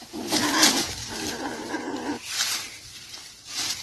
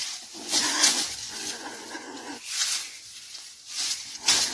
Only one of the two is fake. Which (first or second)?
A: second